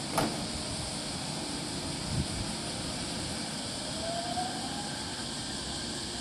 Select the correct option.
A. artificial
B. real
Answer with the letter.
B